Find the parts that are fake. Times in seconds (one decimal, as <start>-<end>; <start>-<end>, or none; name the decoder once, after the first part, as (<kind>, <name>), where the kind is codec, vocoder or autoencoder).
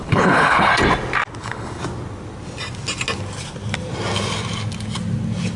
0.0-0.7 (codec, HILCodec); 1.4-1.8